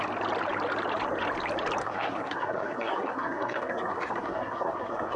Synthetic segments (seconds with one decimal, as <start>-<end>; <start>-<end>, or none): 1.8-5.2